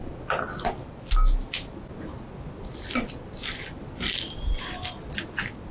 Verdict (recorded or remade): recorded